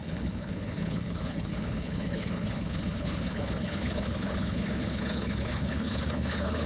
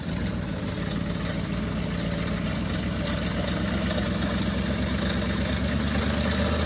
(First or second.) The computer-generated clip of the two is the first